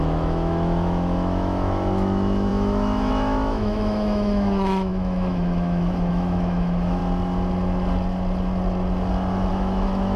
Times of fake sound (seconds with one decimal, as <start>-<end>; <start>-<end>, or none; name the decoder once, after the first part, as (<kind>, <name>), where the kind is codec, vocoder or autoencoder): 0.0-7.0 (autoencoder, DAC-VAE); 9.5-10.2